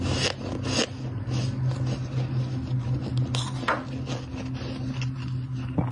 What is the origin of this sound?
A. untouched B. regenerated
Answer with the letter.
A